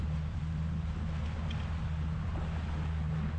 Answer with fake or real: real